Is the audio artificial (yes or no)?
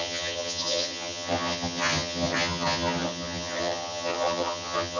yes